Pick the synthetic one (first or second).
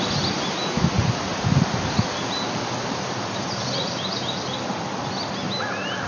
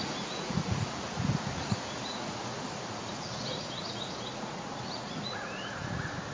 second